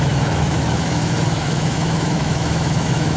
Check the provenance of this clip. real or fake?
fake